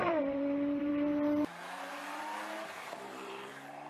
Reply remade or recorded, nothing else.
remade